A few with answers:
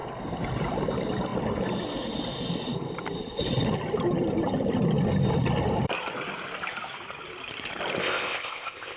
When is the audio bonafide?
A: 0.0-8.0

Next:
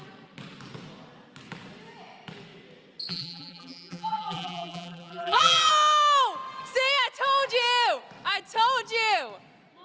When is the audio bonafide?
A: 0.0-3.1; 5.7-9.8

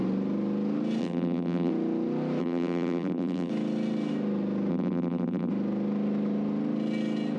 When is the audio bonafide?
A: 0.0-1.0; 1.7-2.4; 3.5-4.7; 5.5-7.4

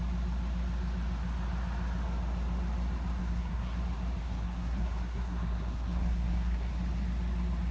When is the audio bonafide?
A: 0.0-3.2; 3.8-4.2; 6.7-7.7

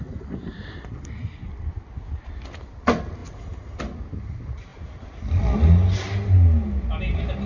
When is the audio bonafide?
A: 0.0-7.5

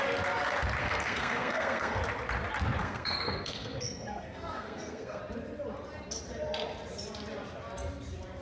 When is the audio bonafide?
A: 0.0-0.8; 2.0-2.8; 5.2-8.4

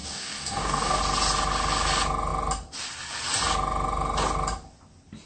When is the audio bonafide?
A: 1.0-5.3